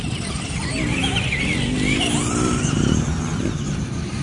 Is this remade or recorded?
recorded